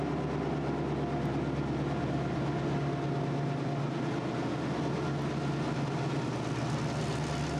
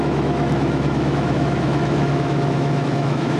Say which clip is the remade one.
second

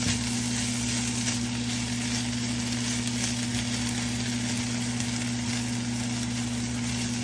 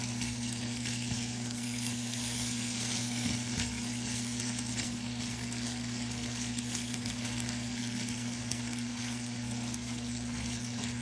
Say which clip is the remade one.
second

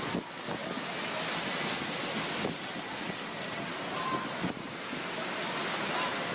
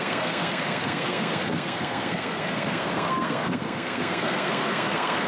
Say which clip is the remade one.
second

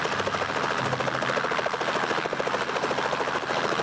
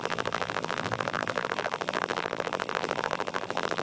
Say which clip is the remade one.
second